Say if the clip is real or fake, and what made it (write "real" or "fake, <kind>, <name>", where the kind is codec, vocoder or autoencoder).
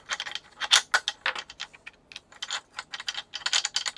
real